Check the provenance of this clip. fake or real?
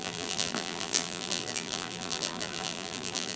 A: fake